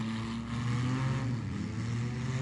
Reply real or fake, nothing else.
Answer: real